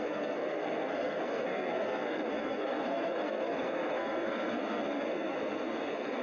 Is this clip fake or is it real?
fake